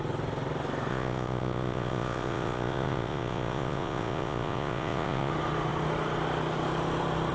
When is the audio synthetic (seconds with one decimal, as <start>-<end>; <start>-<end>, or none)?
0.9-5.3